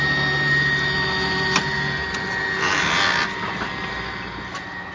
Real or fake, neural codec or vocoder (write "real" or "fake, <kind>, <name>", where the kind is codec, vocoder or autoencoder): real